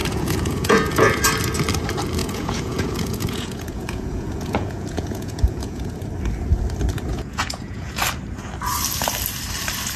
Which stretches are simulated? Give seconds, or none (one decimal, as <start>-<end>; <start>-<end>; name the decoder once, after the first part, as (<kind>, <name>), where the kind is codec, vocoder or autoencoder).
0.0-1.2 (vocoder, Vocos); 2.2-5.9; 7.1-8.0